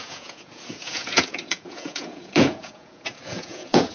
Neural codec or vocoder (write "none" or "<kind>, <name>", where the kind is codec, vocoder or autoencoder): vocoder, Vocos